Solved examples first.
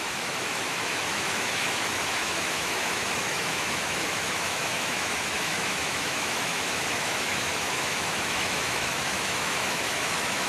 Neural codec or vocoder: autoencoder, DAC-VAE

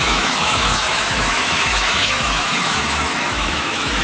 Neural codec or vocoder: autoencoder, DAC-VAE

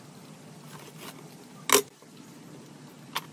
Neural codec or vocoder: none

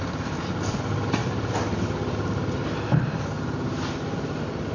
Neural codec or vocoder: none